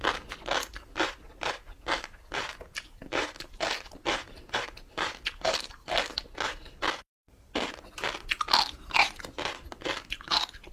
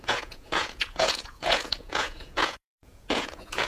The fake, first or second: second